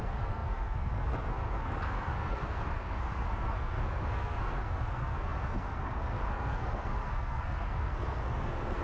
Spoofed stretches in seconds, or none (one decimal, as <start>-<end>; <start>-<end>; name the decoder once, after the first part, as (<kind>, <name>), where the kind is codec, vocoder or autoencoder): 0.0-8.8 (codec, SNAC)